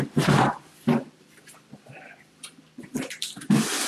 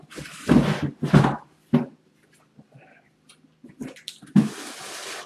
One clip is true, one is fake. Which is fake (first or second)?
first